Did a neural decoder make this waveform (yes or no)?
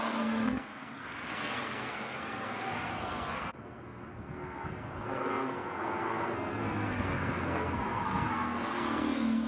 yes